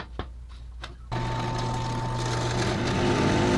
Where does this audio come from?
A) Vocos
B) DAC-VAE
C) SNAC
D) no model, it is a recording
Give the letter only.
D